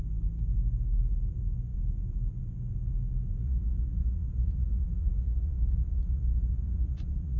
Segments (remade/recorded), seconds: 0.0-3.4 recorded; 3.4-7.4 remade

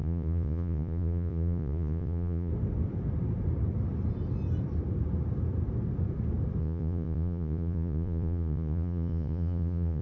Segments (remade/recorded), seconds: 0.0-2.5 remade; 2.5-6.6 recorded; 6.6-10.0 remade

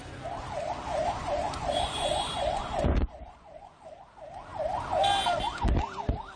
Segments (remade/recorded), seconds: 0.0-0.9 recorded; 0.9-4.0 remade; 4.0-6.4 recorded

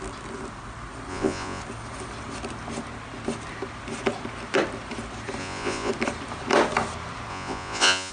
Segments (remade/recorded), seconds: 0.0-1.1 recorded; 1.1-1.6 remade; 1.6-5.4 recorded; 5.4-5.9 remade; 5.9-7.3 recorded; 7.3-8.1 remade

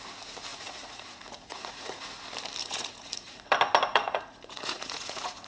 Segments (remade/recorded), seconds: 0.0-0.5 recorded; 0.5-2.0 remade; 2.0-2.6 recorded; 2.6-3.5 remade; 3.5-3.9 recorded; 3.9-5.5 remade

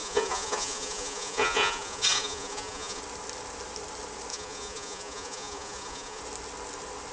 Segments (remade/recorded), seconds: 0.0-3.0 remade; 3.0-4.3 recorded; 4.3-6.2 remade; 6.2-7.1 recorded

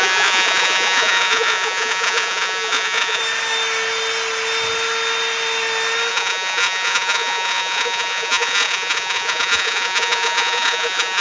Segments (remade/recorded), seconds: 0.0-3.2 remade; 3.2-6.1 recorded; 6.1-11.2 remade

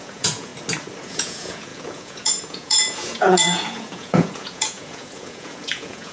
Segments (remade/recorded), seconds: 0.0-0.5 remade; 0.5-1.0 recorded; 1.0-6.1 remade